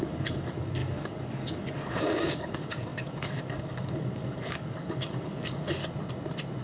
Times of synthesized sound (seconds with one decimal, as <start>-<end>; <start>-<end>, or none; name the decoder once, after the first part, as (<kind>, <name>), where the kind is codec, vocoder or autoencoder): 0.0-5.8 (codec, DAC)